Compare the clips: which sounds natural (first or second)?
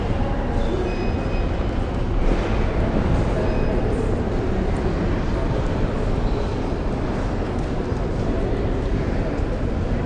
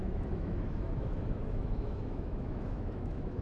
first